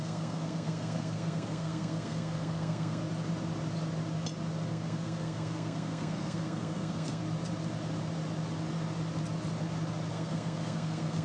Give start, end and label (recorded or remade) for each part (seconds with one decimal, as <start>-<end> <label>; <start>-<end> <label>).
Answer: 0.0-3.0 remade; 3.0-4.7 recorded; 4.7-7.2 remade; 7.2-10.1 recorded; 10.1-11.2 remade